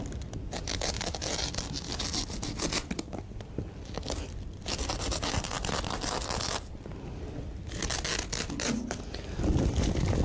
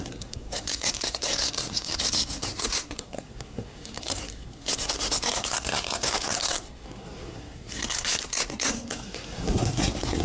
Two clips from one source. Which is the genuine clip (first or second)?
first